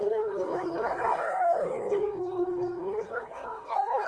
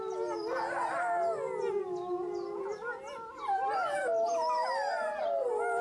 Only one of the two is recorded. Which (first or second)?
second